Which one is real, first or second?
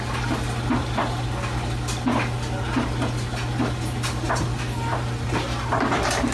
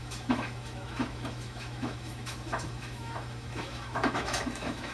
first